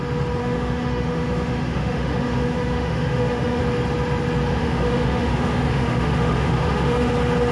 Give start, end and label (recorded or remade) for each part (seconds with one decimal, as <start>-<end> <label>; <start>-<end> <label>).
0.0-0.4 recorded; 0.4-3.6 remade; 3.6-4.5 recorded; 4.5-7.1 remade; 7.1-7.5 recorded